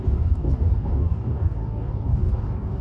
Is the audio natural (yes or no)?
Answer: no